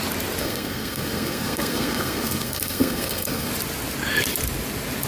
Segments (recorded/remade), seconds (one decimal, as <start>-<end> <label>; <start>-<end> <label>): 0.0-0.4 recorded; 0.4-3.5 remade; 3.5-5.1 recorded

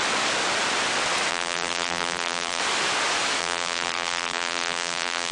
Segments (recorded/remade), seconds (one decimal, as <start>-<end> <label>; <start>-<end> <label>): 0.0-1.3 recorded; 1.3-2.6 remade; 2.6-3.4 recorded; 3.4-5.3 remade

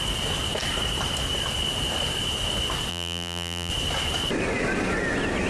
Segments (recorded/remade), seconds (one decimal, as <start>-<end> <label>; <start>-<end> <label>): 0.0-2.9 recorded; 2.9-3.7 remade; 3.7-5.5 recorded

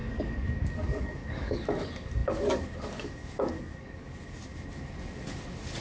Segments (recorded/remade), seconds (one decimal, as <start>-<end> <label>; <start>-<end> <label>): 0.0-4.5 remade; 4.5-5.8 recorded

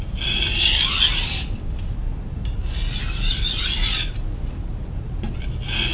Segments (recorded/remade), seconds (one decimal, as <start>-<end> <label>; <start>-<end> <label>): 0.0-5.9 recorded